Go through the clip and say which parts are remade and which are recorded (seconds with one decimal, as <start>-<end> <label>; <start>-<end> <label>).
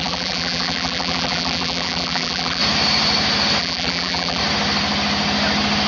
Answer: 0.0-2.6 remade; 2.6-3.6 recorded; 3.6-4.4 remade; 4.4-5.9 recorded